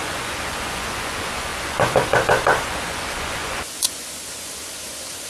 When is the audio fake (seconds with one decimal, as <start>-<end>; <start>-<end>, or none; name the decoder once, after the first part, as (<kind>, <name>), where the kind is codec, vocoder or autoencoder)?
0.0-5.3 (vocoder, Vocos)